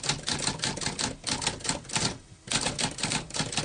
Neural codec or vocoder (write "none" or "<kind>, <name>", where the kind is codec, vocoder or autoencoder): none